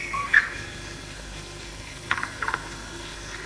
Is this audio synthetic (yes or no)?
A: yes